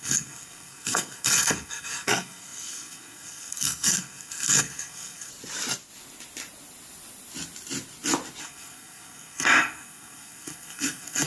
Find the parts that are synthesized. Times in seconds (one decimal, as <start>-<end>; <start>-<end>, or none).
0.0-5.3; 8.4-11.3